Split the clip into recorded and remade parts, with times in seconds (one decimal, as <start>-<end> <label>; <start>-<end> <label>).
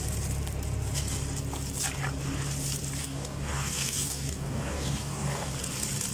0.0-3.0 recorded; 3.0-5.5 remade; 5.5-6.1 recorded